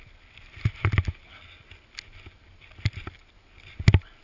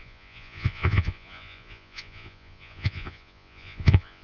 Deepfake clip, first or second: second